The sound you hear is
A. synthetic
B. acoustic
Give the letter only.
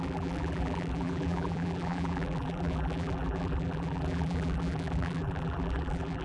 A